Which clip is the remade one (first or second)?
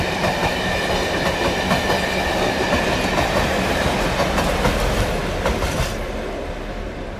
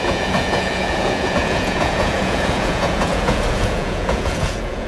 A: second